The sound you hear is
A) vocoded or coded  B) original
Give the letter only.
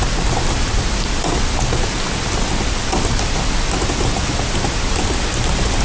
B